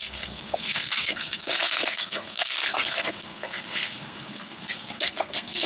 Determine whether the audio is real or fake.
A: fake